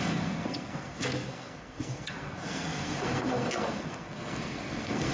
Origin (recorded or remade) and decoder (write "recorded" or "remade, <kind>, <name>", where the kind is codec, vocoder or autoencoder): remade, codec, SNAC